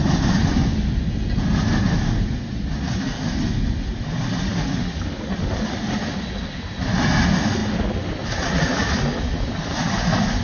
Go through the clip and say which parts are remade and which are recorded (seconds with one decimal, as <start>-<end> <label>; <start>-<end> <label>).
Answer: 0.0-10.4 recorded